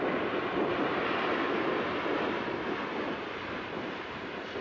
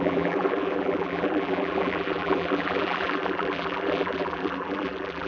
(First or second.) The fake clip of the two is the second